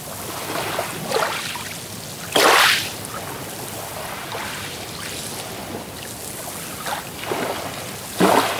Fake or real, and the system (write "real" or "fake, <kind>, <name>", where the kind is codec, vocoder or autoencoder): real